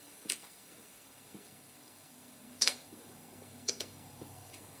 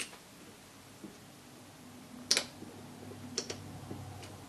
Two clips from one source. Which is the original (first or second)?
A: second